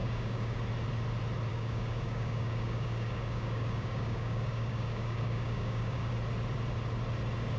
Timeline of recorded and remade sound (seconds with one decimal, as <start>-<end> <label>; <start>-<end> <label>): 0.0-0.6 remade; 0.6-1.5 recorded; 1.5-6.1 remade; 6.1-7.6 recorded